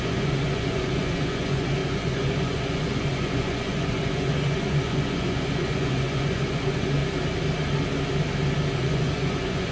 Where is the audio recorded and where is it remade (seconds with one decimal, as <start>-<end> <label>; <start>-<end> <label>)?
0.0-7.0 remade; 7.0-8.8 recorded; 8.8-9.7 remade